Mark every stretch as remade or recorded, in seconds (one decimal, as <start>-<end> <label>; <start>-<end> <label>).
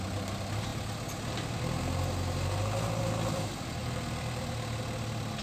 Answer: 0.0-5.4 recorded